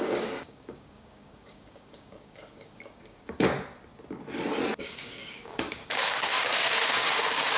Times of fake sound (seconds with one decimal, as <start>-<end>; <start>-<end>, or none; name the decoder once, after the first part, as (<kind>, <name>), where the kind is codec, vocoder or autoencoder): 0.0-3.5 (codec, DAC); 4.8-7.6